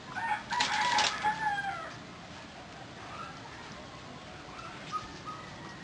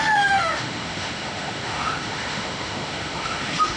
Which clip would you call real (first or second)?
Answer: first